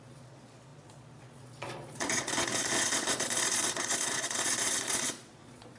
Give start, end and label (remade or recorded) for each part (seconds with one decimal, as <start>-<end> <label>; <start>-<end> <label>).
0.0-5.8 remade